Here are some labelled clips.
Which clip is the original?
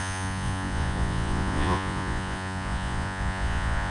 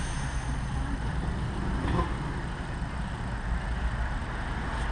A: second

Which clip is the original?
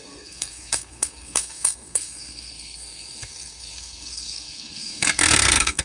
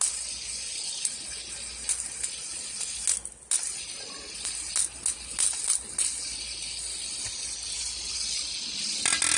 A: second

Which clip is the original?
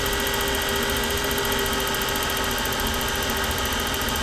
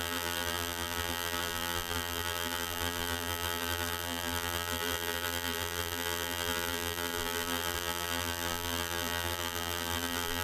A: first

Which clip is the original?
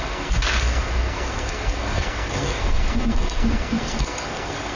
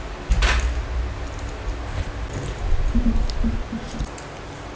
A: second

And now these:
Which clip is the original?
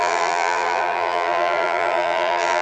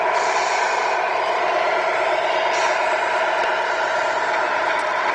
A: second